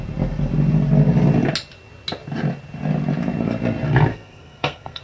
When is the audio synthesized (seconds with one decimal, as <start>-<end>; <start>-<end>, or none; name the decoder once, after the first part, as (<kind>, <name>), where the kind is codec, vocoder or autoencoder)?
4.1-5.0 (codec, SNAC)